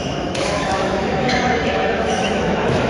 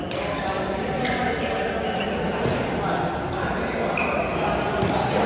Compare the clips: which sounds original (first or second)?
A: second